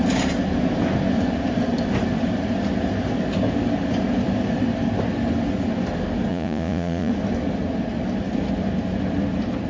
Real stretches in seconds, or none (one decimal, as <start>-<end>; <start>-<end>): 0.0-6.3; 7.1-9.7